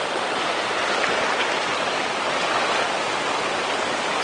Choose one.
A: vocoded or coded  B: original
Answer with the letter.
B